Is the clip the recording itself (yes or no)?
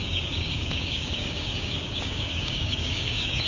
no